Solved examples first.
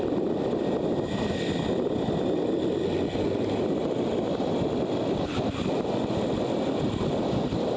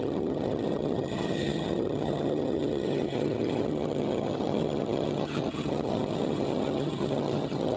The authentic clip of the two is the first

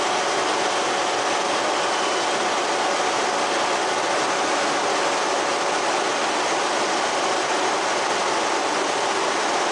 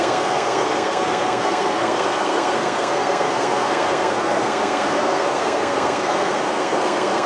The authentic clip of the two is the first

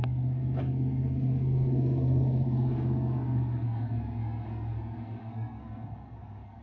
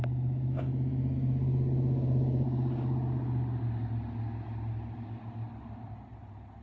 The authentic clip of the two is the second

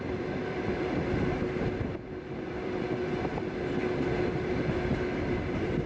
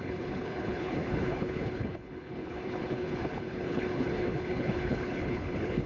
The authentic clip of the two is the first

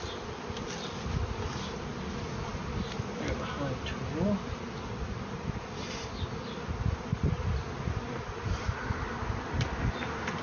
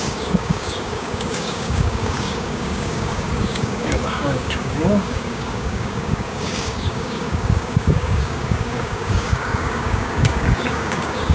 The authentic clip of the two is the first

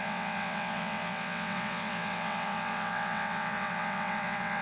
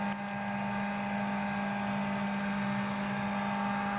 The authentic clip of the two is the second